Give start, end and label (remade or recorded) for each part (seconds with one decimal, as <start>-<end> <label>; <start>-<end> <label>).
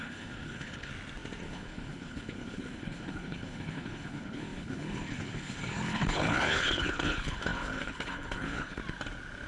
0.0-0.9 remade; 0.9-1.4 recorded; 1.4-8.8 remade; 8.8-9.5 recorded